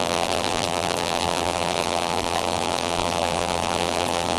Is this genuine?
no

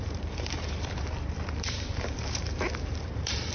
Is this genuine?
no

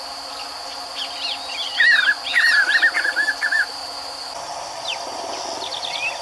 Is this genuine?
no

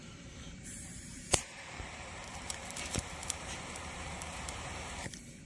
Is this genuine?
no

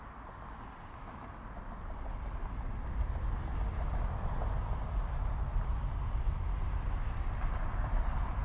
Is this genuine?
yes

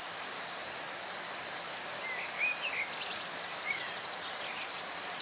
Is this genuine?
yes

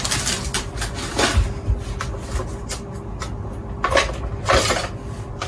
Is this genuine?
yes